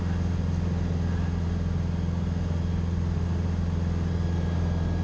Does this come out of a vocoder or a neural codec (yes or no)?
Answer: no